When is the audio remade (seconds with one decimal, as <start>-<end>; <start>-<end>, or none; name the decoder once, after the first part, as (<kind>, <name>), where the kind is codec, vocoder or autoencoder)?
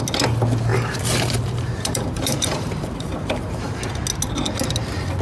0.7-3.8 (vocoder, BigVGAN v2)